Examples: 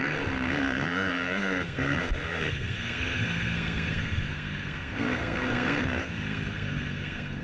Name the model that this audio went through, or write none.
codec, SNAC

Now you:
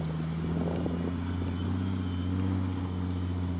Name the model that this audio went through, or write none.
none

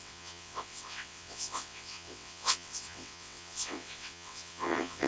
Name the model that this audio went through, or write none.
vocoder, WaveNeXt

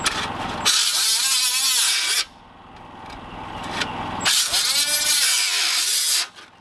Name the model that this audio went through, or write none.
none